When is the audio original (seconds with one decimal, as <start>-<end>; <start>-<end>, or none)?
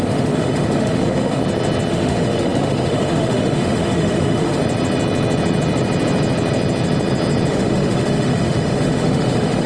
1.4-1.9; 4.6-7.5